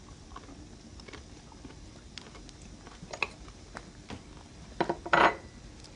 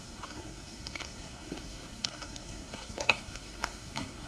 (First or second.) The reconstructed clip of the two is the second